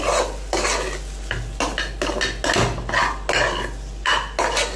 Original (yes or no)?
yes